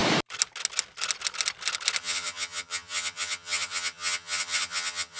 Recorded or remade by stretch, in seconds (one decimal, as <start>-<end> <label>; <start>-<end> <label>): 0.0-2.0 recorded; 2.0-5.2 remade